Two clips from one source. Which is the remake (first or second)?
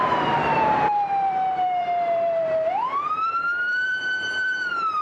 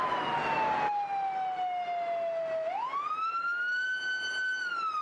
first